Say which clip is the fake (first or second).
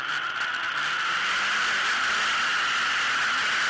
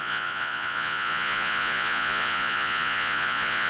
second